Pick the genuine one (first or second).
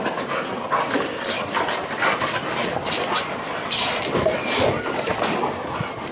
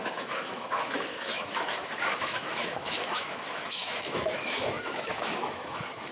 first